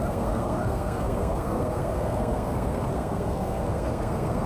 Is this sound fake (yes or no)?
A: yes